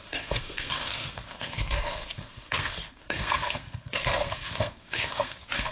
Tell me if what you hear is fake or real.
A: fake